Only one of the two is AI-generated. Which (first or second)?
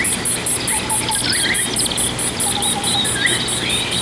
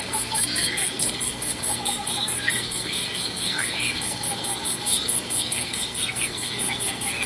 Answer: second